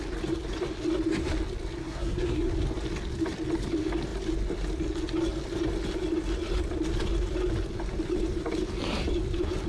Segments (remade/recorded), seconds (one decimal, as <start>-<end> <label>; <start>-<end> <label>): 0.0-1.8 recorded; 1.8-2.5 remade; 2.5-9.7 recorded